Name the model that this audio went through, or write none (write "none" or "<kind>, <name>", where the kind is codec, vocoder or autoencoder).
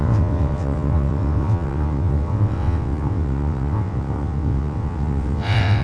vocoder, WaveNeXt